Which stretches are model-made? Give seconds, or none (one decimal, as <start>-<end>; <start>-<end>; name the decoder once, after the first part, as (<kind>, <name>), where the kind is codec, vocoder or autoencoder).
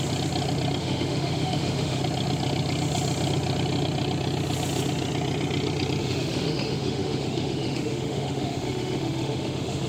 0.8-2.0 (autoencoder, DAC-VAE); 6.0-9.9